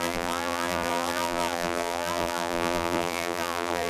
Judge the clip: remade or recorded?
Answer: remade